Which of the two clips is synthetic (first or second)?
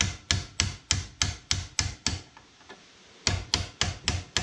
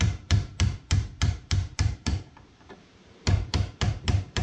second